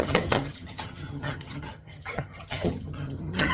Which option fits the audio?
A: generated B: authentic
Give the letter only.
A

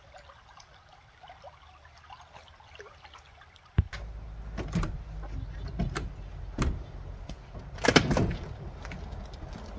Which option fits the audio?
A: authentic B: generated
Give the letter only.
A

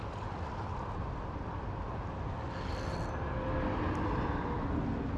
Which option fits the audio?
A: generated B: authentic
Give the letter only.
B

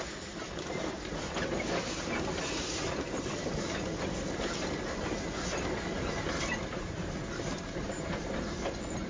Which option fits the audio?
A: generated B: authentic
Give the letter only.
B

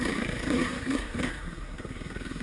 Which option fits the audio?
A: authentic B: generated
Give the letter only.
B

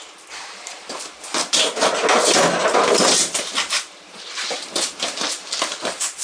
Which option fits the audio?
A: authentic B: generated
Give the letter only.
A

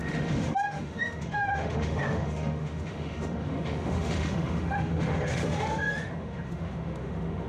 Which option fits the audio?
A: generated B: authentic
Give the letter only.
A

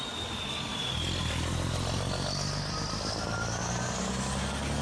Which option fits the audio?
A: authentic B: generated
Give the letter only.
A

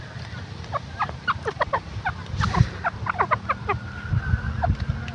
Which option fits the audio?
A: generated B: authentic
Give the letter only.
B